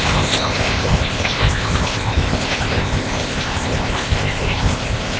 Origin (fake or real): fake